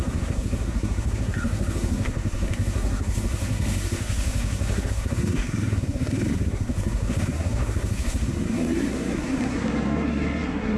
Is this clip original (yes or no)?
no